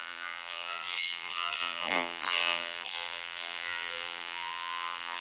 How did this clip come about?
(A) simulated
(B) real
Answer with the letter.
A